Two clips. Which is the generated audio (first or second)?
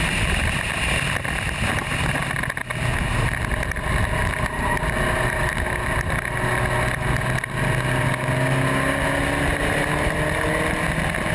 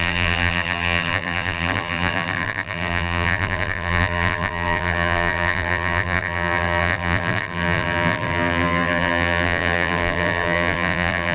second